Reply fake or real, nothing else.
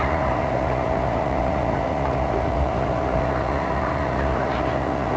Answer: fake